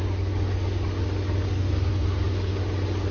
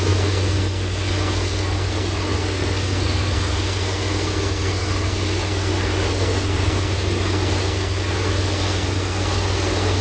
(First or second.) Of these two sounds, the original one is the first